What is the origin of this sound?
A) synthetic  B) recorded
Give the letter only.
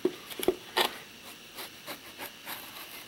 B